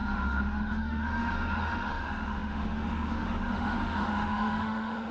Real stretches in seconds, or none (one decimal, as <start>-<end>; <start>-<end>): none